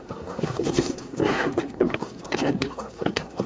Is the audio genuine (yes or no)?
no